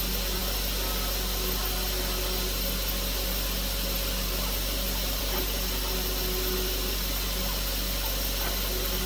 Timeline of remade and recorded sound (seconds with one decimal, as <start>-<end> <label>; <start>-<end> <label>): 0.0-9.1 recorded